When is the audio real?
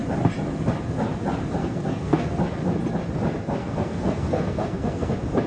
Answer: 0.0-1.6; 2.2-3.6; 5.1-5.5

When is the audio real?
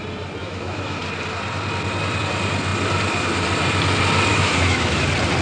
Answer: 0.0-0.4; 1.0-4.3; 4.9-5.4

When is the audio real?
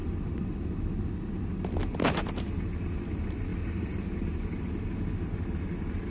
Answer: 0.0-3.5; 4.0-6.1